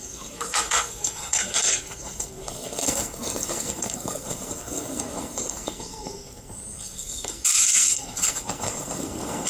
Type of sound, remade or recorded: remade